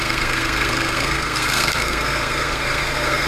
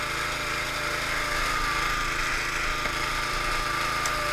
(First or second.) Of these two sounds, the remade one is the first